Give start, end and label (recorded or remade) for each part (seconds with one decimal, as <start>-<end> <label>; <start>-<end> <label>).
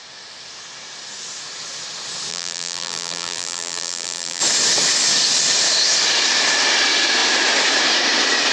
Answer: 0.0-2.3 recorded; 2.3-4.4 remade; 4.4-8.5 recorded